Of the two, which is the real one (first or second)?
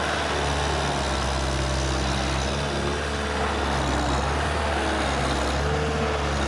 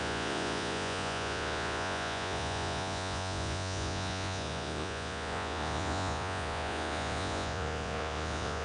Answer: first